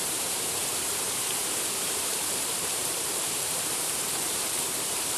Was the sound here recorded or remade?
remade